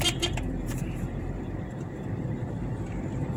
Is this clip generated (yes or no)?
yes